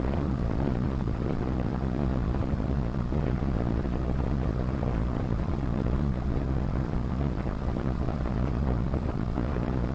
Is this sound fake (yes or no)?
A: yes